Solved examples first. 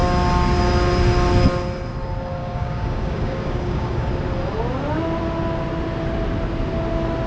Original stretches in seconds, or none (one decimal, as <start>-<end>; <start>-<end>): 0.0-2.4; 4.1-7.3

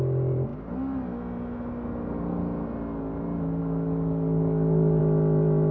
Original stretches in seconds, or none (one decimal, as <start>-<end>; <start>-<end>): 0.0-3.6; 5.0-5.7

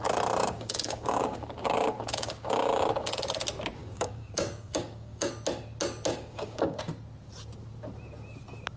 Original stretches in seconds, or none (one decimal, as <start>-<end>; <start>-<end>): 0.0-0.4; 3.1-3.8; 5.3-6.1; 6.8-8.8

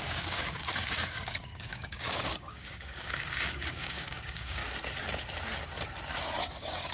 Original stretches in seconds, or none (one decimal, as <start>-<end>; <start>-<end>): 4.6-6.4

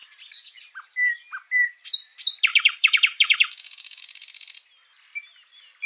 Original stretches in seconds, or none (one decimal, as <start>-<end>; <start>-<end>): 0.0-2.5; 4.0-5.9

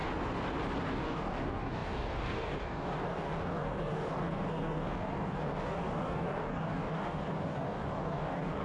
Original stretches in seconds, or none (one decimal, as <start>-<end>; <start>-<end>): 0.0-0.8

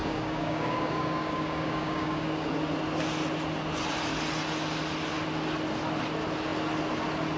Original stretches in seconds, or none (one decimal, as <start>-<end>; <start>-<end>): 2.5-7.4

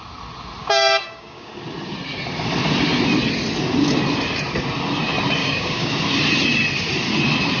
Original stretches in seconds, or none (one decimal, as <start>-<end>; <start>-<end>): 0.0-0.6; 1.5-5.4; 5.9-7.6